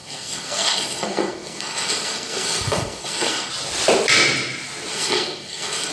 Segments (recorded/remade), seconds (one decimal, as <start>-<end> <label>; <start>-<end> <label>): 0.0-3.5 remade; 3.5-4.9 recorded; 4.9-5.9 remade

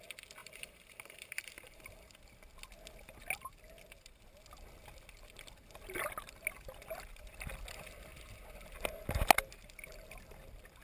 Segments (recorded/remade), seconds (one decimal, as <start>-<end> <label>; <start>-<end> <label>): 0.0-0.4 recorded; 0.4-2.1 remade; 2.1-10.8 recorded

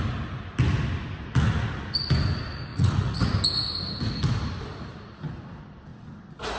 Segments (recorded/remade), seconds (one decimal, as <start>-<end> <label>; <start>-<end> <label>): 0.0-2.7 recorded; 2.7-3.4 remade; 3.4-6.6 recorded

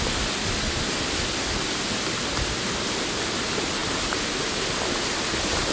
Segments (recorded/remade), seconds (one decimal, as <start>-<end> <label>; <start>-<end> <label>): 0.0-3.8 recorded; 3.8-4.6 remade; 4.6-5.7 recorded

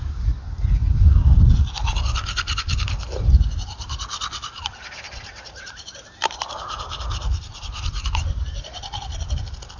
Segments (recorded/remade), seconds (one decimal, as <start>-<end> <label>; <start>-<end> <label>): 0.0-4.4 recorded; 4.4-9.0 remade; 9.0-9.8 recorded

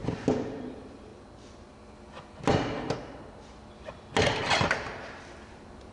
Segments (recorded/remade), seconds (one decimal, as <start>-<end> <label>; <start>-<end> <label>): 0.0-0.7 recorded; 0.7-1.1 remade; 1.1-4.4 recorded; 4.4-5.9 remade